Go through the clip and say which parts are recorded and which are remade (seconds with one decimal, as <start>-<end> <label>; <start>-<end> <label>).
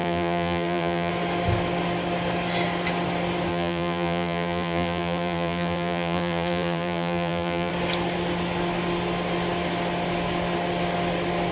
0.0-1.1 remade; 1.1-3.5 recorded; 3.5-7.7 remade; 7.7-11.5 recorded